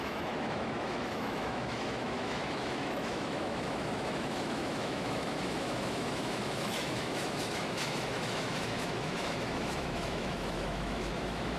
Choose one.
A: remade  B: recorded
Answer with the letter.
A